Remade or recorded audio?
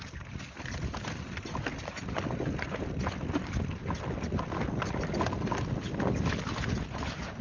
recorded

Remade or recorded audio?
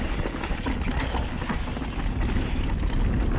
recorded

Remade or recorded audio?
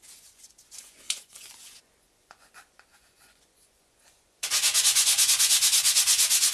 remade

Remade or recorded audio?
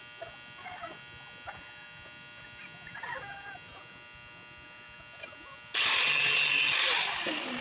recorded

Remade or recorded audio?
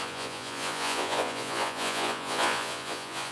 remade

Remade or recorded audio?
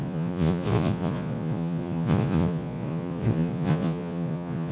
remade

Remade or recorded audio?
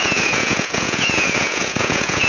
remade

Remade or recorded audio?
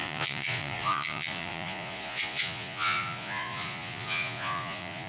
remade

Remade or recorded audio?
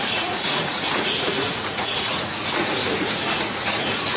remade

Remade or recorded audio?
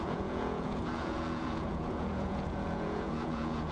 remade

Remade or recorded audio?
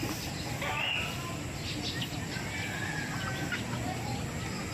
recorded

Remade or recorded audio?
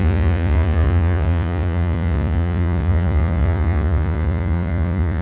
remade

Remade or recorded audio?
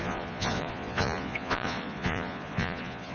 remade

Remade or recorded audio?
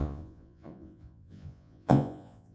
remade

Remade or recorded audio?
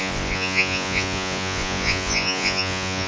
remade